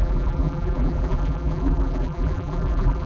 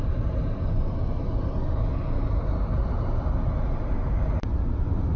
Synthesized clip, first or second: first